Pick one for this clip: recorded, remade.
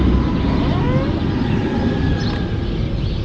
recorded